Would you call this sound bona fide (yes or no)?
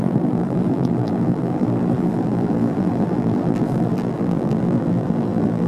no